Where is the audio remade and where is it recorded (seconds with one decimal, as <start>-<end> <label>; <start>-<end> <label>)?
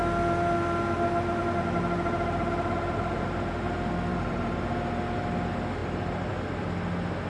0.0-4.1 recorded; 4.1-4.6 remade; 4.6-5.8 recorded; 5.8-6.3 remade; 6.3-7.3 recorded